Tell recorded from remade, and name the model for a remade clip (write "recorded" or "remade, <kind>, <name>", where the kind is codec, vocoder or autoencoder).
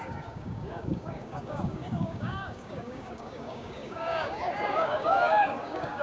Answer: remade, codec, DAC